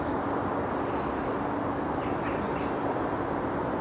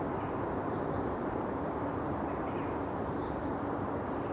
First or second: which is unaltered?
first